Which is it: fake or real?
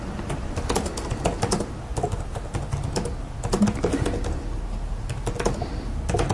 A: real